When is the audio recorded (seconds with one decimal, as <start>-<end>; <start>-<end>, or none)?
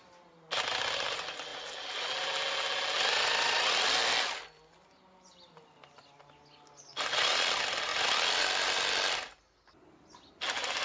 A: 0.0-10.8